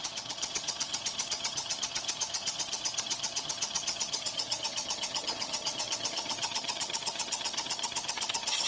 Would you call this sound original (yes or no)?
no